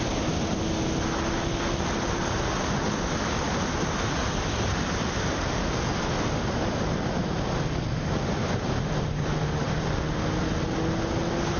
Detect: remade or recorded recorded